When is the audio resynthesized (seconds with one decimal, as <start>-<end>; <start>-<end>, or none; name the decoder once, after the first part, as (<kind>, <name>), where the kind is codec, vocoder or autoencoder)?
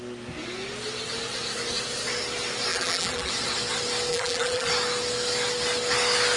2.7-3.3 (vocoder, BigVGAN v2); 4.1-4.7